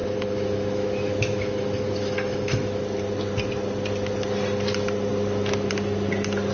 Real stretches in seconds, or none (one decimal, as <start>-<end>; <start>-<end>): 2.8-6.5